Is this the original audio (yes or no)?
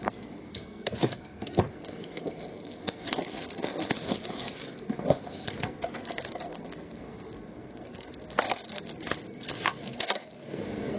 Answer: no